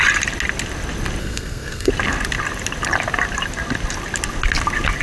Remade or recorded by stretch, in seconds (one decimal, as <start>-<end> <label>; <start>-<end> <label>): 0.0-1.2 recorded; 1.2-1.9 remade; 1.9-5.0 recorded